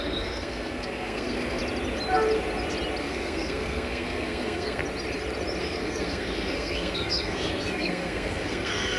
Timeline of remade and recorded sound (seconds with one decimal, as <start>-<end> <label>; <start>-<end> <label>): 0.0-1.6 remade; 1.6-3.0 recorded; 3.0-4.8 remade; 4.8-5.6 recorded; 5.6-9.0 remade